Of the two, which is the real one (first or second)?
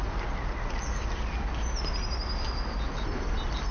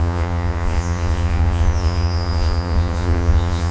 first